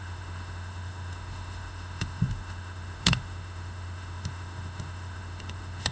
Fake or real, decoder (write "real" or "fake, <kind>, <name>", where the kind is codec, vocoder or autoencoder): fake, autoencoder, DAC-VAE